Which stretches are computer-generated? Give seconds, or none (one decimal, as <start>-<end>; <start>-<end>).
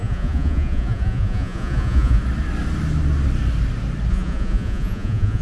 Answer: 0.0-2.2; 4.1-5.4